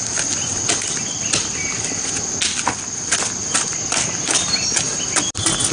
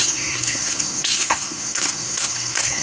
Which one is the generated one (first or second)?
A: second